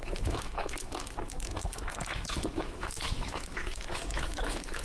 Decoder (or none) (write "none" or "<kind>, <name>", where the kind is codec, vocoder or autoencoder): autoencoder, DAC-VAE